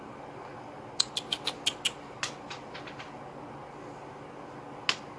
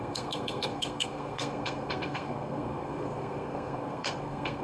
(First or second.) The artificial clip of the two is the second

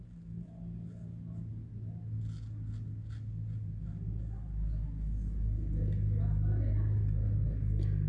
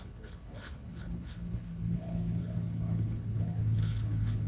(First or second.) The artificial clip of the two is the second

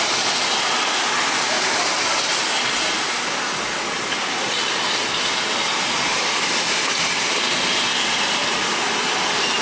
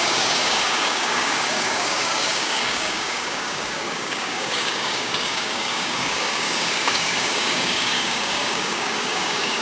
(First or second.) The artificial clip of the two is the second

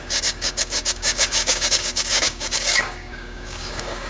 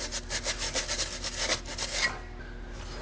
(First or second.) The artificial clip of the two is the first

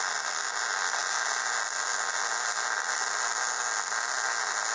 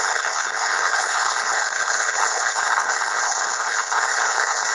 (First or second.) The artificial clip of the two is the second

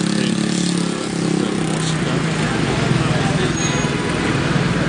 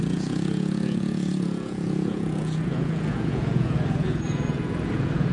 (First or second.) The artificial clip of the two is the second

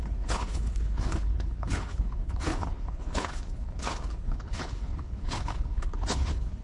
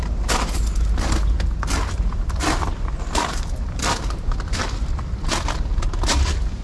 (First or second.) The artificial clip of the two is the first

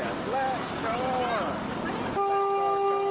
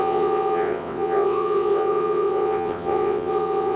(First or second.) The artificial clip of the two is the second